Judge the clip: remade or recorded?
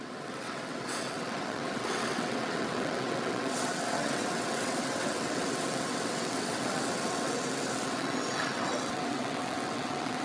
remade